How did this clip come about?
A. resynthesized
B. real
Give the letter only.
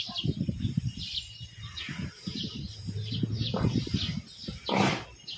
A